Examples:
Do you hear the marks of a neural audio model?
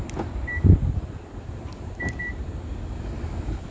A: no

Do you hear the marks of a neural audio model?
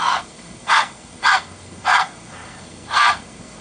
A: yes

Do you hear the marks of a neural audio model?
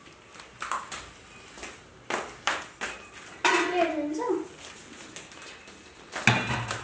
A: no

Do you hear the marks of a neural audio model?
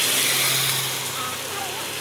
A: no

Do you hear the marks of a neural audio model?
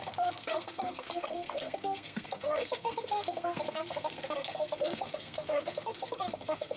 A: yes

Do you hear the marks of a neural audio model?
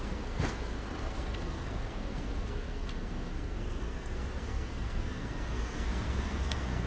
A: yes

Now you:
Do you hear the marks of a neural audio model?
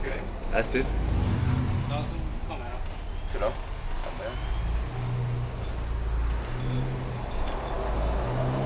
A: no